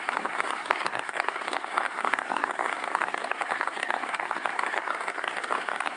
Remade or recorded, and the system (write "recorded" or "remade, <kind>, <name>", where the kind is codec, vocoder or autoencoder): remade, codec, SNAC